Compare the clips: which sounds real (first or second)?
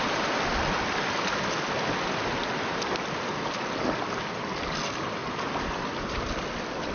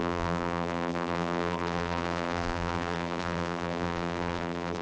first